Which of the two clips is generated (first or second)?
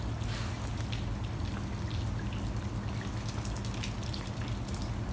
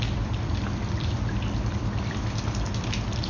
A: second